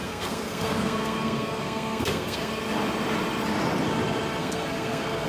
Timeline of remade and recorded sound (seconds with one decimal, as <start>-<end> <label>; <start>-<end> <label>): 0.0-2.5 remade; 2.5-4.4 recorded; 4.4-5.3 remade